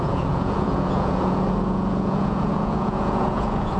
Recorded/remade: remade